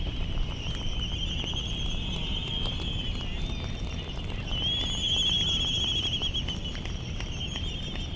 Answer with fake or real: real